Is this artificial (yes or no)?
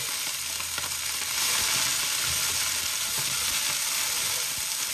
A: no